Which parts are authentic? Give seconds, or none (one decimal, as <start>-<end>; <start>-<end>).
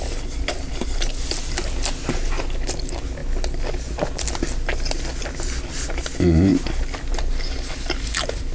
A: 0.0-8.5